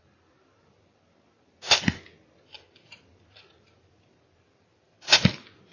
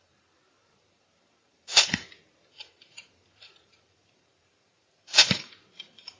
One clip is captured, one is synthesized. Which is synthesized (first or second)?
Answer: second